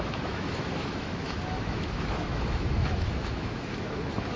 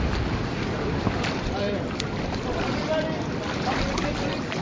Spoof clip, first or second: first